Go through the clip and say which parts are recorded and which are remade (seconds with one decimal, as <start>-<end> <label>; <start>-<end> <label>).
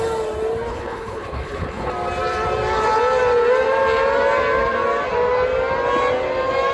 0.0-0.7 recorded; 0.7-1.9 remade; 1.9-6.7 recorded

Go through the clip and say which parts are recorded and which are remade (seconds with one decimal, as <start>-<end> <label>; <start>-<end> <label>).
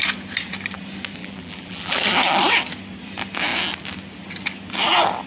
0.0-1.2 recorded; 1.2-2.0 remade; 2.0-5.3 recorded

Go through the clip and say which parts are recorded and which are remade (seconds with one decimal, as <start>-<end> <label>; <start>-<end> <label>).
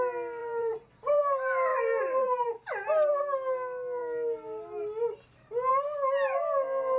0.0-0.4 recorded; 0.4-1.2 remade; 1.2-1.7 recorded; 1.7-3.1 remade; 3.1-7.0 recorded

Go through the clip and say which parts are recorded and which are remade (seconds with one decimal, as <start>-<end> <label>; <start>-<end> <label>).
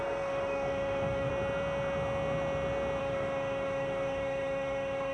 0.0-1.3 remade; 1.3-3.0 recorded; 3.0-5.1 remade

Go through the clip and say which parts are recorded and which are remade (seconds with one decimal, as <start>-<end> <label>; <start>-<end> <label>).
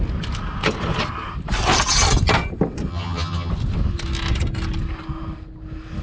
0.0-2.9 recorded; 2.9-3.5 remade; 3.5-6.0 recorded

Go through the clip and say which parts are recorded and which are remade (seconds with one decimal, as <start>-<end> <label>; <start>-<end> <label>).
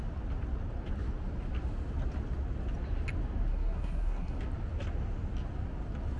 0.0-3.5 recorded; 3.5-4.4 remade; 4.4-6.2 recorded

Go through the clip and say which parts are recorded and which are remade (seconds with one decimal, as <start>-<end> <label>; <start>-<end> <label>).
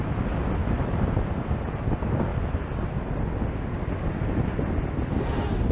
0.0-5.7 recorded